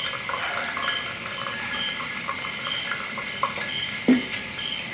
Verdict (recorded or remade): remade